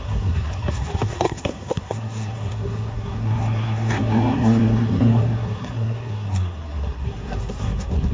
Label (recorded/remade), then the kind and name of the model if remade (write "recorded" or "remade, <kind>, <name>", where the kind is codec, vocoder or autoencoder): remade, codec, SNAC